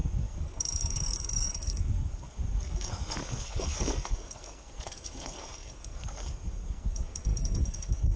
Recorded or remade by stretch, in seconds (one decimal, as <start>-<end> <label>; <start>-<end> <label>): 0.0-8.2 remade